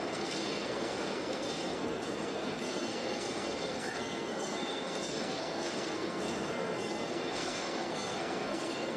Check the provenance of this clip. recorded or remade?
remade